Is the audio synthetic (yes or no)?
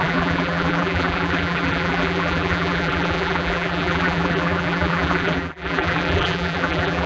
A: yes